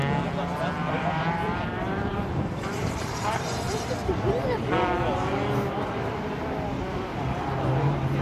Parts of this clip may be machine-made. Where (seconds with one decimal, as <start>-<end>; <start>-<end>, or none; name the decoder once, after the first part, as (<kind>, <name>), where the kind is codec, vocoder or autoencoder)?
0.8-4.3 (vocoder, BigVGAN v2)